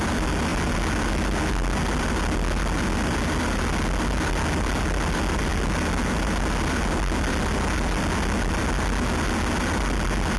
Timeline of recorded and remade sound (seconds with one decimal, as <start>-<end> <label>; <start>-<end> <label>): 0.0-10.4 recorded